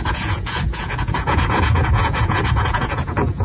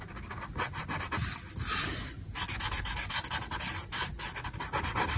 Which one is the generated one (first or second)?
first